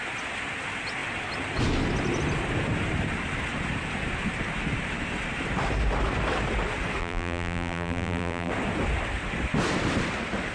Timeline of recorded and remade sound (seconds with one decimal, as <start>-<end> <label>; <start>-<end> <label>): 0.0-7.0 recorded; 7.0-8.5 remade; 8.5-10.5 recorded